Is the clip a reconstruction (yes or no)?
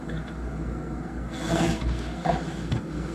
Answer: yes